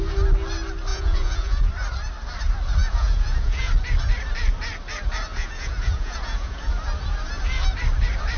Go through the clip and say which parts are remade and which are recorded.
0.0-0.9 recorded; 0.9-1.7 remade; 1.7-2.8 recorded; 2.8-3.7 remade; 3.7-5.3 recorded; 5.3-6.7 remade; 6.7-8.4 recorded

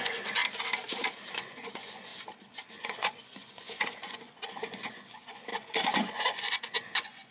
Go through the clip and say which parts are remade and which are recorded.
0.0-0.4 remade; 0.4-1.3 recorded; 1.3-2.1 remade; 2.1-2.7 recorded; 2.7-7.3 remade

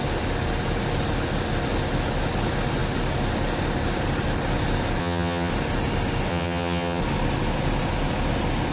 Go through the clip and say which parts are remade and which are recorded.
0.0-5.0 recorded; 5.0-5.5 remade; 5.5-6.3 recorded; 6.3-7.0 remade; 7.0-8.7 recorded

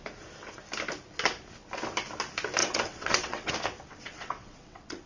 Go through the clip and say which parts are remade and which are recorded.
0.0-2.6 recorded; 2.6-3.5 remade; 3.5-3.9 recorded; 3.9-5.1 remade

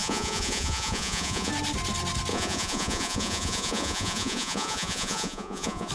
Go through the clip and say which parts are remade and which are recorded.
0.0-1.5 remade; 1.5-2.3 recorded; 2.3-5.9 remade

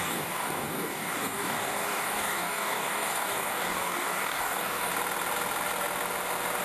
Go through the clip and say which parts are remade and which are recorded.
0.0-4.9 remade; 4.9-6.6 recorded

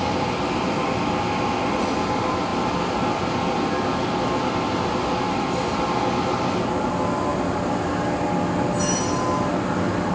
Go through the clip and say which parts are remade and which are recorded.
0.0-10.1 recorded

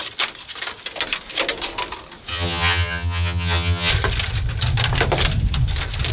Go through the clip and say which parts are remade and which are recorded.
0.0-2.3 recorded; 2.3-3.9 remade; 3.9-6.1 recorded